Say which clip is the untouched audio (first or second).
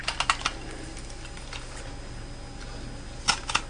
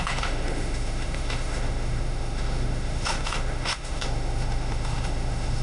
first